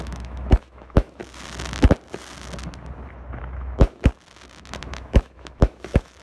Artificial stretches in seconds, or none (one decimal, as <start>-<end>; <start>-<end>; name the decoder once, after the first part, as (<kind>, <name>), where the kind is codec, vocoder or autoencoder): 0.0-1.2 (autoencoder, DAC-VAE); 3.4-4.1; 4.7-6.2